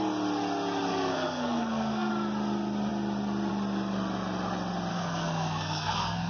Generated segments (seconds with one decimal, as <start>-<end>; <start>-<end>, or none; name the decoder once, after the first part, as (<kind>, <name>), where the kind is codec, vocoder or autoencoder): 0.9-2.1 (codec, SNAC); 4.9-6.3